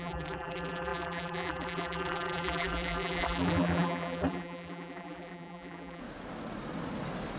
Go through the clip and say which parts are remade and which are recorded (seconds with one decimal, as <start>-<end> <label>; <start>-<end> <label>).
0.0-6.0 remade; 6.0-7.4 recorded